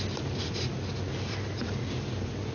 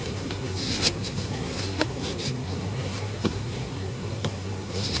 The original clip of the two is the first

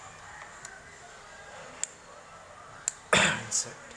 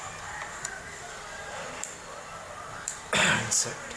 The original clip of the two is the first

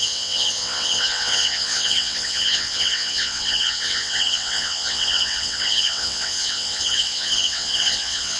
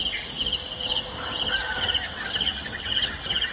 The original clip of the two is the second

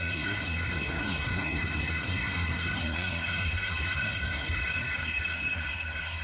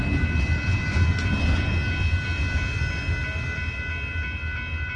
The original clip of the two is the second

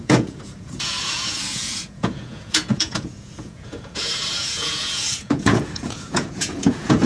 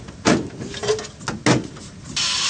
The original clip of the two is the second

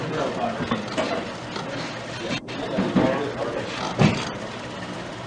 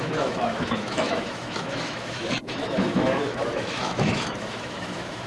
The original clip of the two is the first